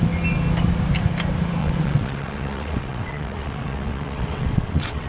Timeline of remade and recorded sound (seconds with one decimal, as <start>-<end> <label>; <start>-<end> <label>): 0.0-1.6 recorded; 1.6-5.1 remade